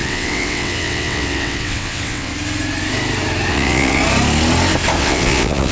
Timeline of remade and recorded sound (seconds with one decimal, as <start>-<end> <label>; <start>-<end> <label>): 0.0-2.3 remade; 2.3-3.5 recorded; 3.5-4.0 remade; 4.0-5.0 recorded; 5.0-5.7 remade

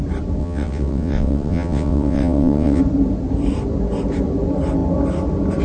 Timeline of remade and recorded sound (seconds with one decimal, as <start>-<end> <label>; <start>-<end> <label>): 0.0-0.4 recorded; 0.4-2.8 remade; 2.8-5.6 recorded

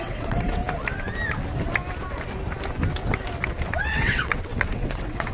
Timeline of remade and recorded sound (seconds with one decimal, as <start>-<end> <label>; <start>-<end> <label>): 0.0-0.6 remade; 0.6-3.8 recorded; 3.8-5.3 remade